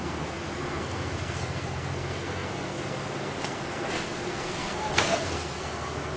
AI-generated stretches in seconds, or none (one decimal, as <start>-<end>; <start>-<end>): 0.0-6.2

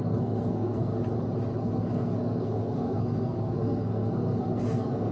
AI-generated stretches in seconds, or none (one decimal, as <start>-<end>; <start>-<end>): 0.0-0.9; 1.6-5.1